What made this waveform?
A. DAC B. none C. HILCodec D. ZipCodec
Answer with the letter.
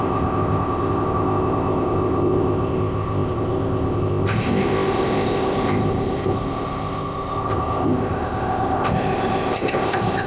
D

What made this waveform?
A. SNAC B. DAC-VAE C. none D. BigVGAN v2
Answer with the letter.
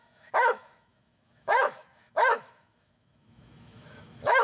B